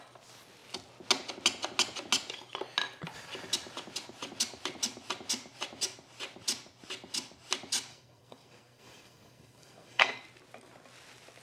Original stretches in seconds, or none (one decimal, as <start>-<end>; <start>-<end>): 0.0-7.9; 10.2-11.4